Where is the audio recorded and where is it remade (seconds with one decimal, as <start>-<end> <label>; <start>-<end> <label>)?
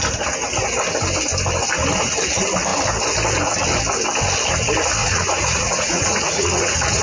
0.0-5.0 recorded; 5.0-7.0 remade